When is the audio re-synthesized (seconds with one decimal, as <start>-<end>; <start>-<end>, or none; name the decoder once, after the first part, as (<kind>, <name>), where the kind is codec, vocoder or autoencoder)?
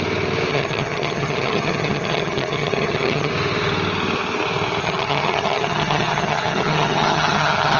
0.5-3.3 (vocoder, HiFi-GAN); 4.8-7.8